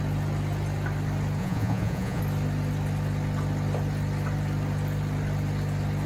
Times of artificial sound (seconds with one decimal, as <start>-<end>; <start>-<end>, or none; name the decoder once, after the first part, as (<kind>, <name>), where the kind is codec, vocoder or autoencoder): 1.4-2.2 (vocoder, Vocos)